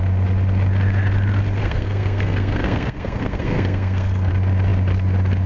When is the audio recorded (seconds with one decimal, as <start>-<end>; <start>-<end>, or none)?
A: 0.0-1.6; 4.3-5.5